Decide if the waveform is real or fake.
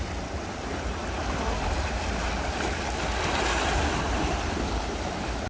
real